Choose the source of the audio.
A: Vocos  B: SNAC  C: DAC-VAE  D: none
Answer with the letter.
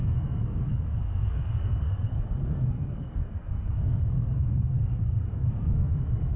B